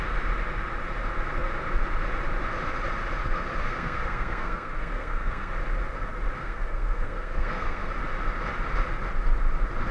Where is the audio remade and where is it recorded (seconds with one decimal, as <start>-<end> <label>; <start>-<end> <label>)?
0.0-3.2 recorded; 3.2-5.5 remade; 5.5-6.4 recorded; 6.4-7.9 remade; 7.9-9.9 recorded

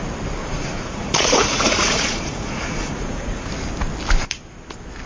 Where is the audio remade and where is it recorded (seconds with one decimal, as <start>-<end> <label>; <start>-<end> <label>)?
0.0-0.4 recorded; 0.4-3.5 remade; 3.5-5.1 recorded

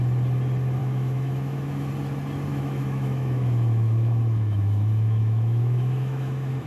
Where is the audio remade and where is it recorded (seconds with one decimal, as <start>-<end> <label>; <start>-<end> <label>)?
0.0-0.8 recorded; 0.8-1.9 remade; 1.9-2.5 recorded; 2.5-6.7 remade

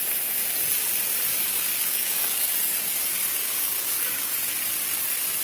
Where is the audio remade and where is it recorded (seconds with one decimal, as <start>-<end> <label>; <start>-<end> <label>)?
0.0-1.3 recorded; 1.3-4.5 remade; 4.5-5.4 recorded

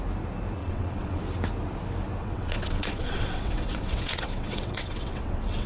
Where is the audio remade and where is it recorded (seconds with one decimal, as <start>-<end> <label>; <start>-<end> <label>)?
0.0-0.6 recorded; 0.6-1.2 remade; 1.2-2.2 recorded; 2.2-5.7 remade

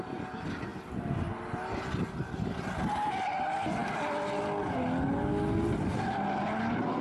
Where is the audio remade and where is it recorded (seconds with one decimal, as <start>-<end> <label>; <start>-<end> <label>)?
0.0-7.0 recorded

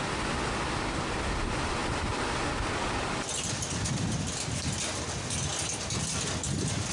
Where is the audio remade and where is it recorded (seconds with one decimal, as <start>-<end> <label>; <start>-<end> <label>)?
0.0-6.9 recorded

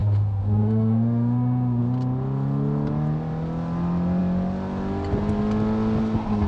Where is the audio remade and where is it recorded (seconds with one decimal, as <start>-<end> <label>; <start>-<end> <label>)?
0.0-1.8 remade; 1.8-6.5 recorded